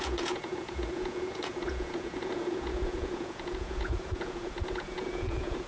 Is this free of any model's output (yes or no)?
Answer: no